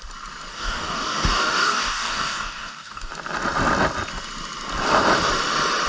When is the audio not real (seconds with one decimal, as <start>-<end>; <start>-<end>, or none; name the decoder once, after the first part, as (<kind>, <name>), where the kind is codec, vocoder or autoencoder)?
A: 0.5-3.1 (codec, DAC)

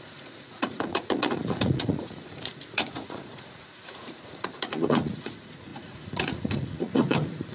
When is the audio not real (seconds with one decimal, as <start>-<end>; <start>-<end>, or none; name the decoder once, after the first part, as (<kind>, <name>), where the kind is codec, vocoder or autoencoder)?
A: 0.0-7.5 (vocoder, Vocos)

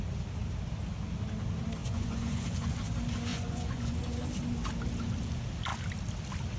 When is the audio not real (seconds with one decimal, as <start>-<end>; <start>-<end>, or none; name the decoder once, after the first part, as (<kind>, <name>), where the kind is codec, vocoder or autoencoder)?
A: 1.8-2.7 (vocoder, Vocos); 3.3-4.2

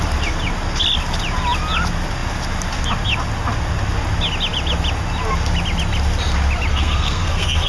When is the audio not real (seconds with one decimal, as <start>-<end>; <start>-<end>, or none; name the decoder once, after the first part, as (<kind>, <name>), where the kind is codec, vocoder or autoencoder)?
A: 6.7-7.7 (codec, SNAC)

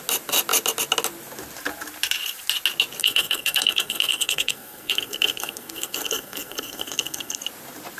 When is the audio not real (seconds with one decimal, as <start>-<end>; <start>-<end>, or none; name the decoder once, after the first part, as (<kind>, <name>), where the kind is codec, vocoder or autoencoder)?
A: 3.0-7.4 (codec, SNAC)

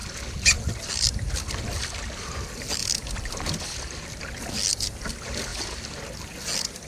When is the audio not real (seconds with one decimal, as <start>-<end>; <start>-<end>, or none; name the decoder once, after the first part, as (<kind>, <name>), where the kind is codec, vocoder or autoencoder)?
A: none